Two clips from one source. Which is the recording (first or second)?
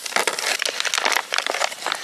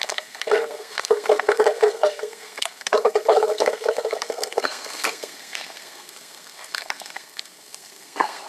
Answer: first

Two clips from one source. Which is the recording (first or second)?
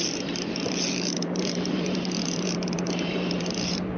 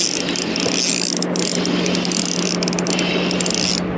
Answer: second